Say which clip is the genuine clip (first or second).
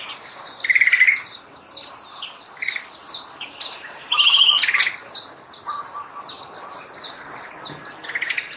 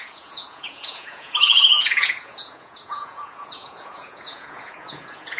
first